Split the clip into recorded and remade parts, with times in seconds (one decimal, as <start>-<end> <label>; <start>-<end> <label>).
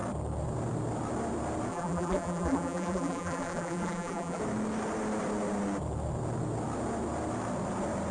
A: 0.0-1.7 recorded; 1.7-4.4 remade; 4.4-8.1 recorded